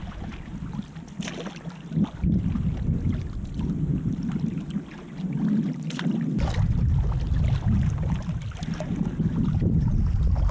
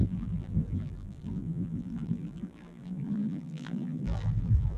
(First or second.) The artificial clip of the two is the second